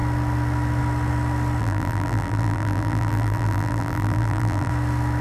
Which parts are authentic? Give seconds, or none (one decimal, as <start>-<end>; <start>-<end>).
0.0-1.6; 4.7-5.2

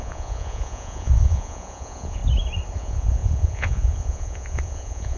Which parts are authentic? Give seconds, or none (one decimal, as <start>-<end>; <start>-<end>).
2.2-2.8